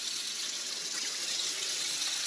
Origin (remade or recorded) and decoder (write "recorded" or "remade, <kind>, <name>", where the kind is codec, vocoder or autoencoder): remade, vocoder, WaveNeXt